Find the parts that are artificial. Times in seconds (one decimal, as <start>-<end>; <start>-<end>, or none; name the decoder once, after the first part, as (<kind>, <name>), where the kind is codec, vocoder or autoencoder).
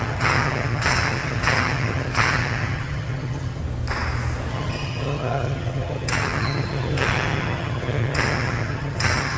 0.0-3.6 (vocoder, HiFi-GAN); 4.5-9.4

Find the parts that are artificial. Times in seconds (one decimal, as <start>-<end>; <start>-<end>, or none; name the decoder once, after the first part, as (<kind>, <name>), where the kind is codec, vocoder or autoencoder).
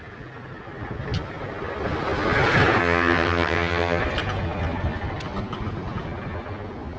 2.8-4.0 (vocoder, HiFi-GAN)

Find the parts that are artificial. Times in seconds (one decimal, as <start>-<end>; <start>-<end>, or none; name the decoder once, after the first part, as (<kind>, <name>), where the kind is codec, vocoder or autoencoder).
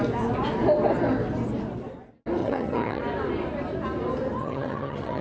2.4-3.0 (vocoder, HiFi-GAN); 4.4-5.2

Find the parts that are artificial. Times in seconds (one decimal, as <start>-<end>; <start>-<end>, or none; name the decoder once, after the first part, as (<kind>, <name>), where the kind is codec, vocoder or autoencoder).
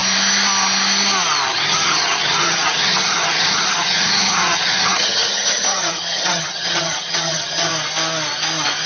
1.5-7.7 (vocoder, HiFi-GAN)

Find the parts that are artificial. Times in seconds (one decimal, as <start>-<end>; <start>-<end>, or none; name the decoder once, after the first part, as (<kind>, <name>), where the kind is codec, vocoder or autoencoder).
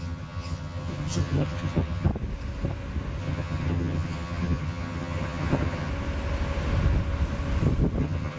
0.0-2.1 (vocoder, HiFi-GAN); 3.2-5.9; 8.0-8.4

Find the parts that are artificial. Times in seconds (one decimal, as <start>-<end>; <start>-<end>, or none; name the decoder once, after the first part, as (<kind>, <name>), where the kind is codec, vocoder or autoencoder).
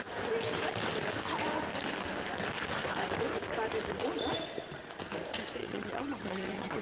5.6-6.8 (vocoder, HiFi-GAN)